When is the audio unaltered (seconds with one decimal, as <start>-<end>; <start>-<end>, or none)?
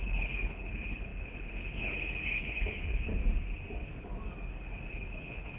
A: 3.2-4.9